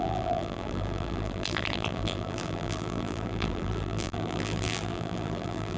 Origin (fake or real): fake